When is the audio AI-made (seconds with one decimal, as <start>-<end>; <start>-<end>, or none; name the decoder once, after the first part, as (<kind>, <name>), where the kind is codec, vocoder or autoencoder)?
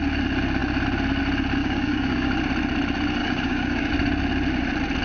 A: 1.6-2.3 (codec, DAC); 3.2-3.9